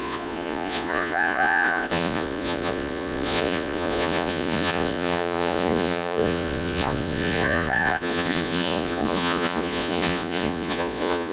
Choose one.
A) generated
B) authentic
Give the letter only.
A